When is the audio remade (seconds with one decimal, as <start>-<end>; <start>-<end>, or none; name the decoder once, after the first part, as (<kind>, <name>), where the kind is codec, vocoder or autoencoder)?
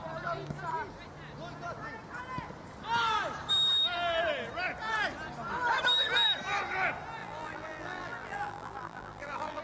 7.2-9.6 (vocoder, BigVGAN v2)